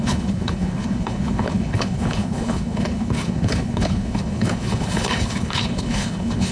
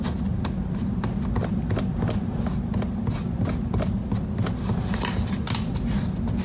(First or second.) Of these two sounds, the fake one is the first